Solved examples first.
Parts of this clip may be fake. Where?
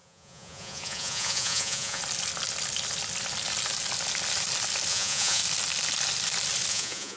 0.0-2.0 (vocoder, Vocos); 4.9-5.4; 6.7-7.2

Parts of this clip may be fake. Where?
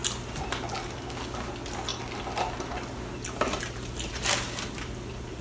none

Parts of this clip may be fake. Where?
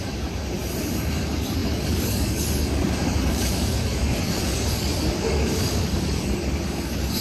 0.0-0.6 (codec, DAC); 1.1-7.2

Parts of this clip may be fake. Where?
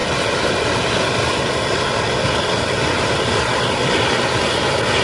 none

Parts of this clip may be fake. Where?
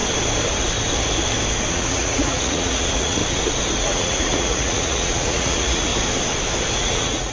1.7-3.2 (vocoder, Vocos); 3.8-5.9; 6.8-7.3